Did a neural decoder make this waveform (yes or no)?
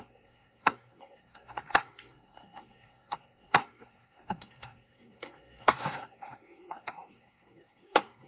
yes